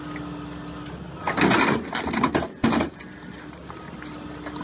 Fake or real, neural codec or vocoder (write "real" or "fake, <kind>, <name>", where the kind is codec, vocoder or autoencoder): real